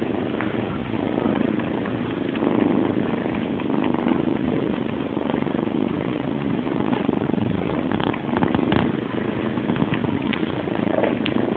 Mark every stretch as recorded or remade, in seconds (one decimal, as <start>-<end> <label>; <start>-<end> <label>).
0.0-0.8 recorded; 0.8-1.5 remade; 1.5-4.1 recorded; 4.1-8.1 remade; 8.1-10.0 recorded; 10.0-11.0 remade; 11.0-11.6 recorded